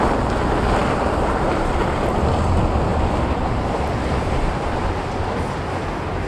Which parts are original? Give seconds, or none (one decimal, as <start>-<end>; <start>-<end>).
0.0-0.8; 2.3-2.9; 5.8-6.3